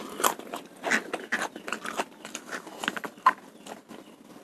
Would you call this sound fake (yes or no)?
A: no